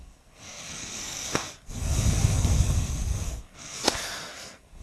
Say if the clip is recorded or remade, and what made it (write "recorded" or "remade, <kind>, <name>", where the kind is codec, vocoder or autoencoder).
remade, codec, SNAC